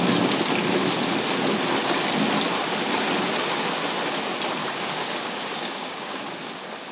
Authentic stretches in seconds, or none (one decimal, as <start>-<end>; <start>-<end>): 0.0-4.6; 6.2-6.9